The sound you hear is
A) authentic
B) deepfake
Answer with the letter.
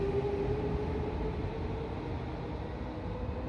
A